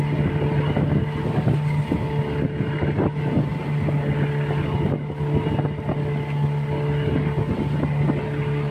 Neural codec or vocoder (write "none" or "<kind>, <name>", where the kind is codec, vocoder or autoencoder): none